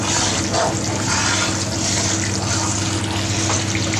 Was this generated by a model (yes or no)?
yes